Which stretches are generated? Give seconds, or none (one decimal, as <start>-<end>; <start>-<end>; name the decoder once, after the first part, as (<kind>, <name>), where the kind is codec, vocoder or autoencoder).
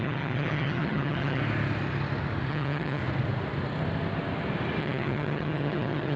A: 0.0-1.4 (vocoder, HiFi-GAN); 2.5-3.0; 4.8-6.2